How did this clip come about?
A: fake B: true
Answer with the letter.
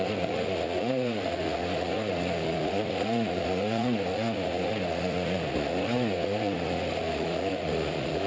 A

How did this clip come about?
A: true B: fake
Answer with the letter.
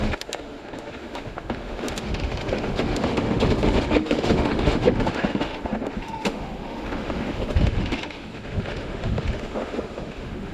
B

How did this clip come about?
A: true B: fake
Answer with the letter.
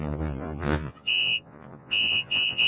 B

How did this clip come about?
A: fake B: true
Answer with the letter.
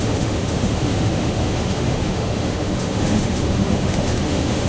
A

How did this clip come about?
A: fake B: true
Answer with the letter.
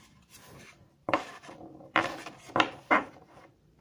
A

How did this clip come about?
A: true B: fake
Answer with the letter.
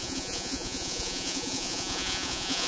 B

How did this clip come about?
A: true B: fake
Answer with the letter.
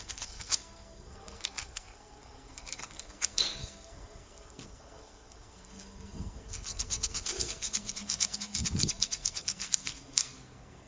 B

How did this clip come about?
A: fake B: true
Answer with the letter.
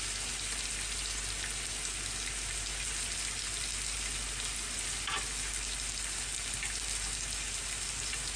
B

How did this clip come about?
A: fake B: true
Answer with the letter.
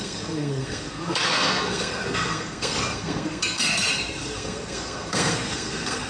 A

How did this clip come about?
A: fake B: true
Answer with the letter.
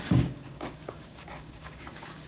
A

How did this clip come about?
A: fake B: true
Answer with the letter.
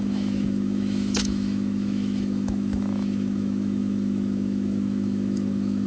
A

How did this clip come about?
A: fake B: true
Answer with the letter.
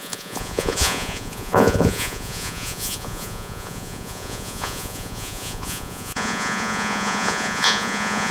A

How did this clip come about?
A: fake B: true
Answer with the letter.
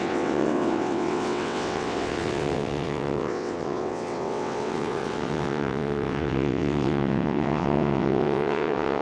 A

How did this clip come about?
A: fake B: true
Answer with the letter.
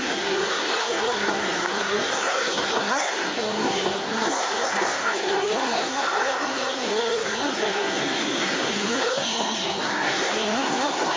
A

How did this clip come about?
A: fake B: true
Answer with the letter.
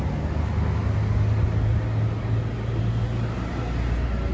B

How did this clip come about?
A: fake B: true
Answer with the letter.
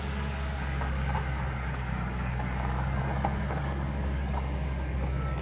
A